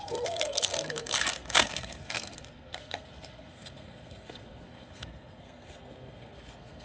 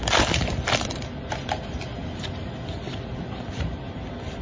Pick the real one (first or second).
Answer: second